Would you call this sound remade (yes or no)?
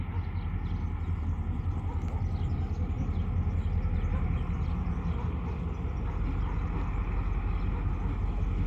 no